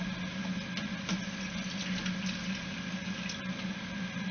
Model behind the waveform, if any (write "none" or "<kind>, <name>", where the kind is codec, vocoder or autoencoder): none